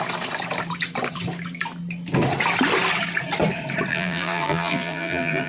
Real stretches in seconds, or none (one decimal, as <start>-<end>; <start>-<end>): 0.0-3.9